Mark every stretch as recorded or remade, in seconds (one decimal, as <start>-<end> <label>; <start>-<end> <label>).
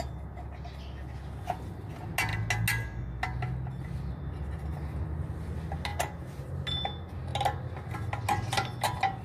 0.0-5.9 recorded; 5.9-6.5 remade; 6.5-9.2 recorded